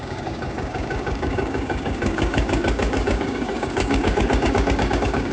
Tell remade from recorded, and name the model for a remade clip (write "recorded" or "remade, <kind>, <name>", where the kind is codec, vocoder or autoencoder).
remade, codec, DAC